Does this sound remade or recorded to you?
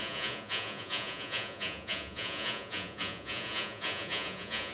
remade